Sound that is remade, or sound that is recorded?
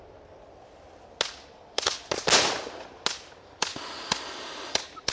recorded